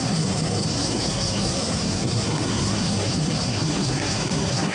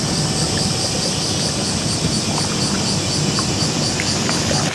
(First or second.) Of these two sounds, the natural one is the second